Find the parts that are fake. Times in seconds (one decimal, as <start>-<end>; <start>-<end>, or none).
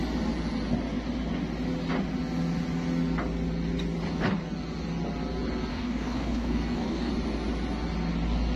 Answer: 5.7-7.1